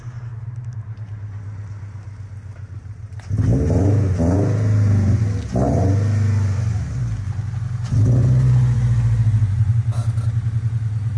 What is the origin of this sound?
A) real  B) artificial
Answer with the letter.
A